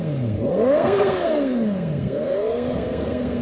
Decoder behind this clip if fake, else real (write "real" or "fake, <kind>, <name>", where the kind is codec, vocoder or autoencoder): fake, codec, SNAC